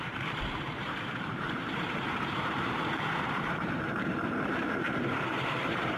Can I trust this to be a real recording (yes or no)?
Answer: no